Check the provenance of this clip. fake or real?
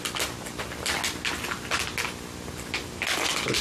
real